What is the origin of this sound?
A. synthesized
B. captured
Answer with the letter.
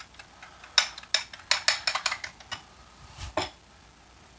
B